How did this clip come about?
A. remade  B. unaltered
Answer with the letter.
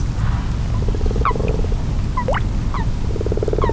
B